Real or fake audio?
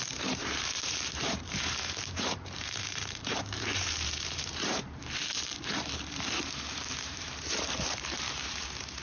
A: fake